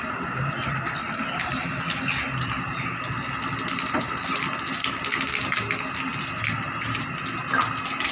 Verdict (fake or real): real